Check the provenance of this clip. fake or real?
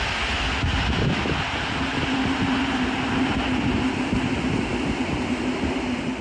real